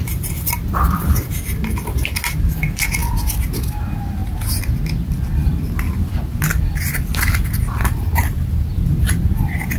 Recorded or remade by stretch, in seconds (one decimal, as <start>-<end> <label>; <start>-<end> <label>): 0.0-9.8 recorded